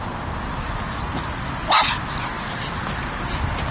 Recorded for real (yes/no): yes